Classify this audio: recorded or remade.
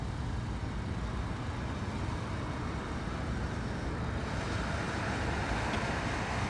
recorded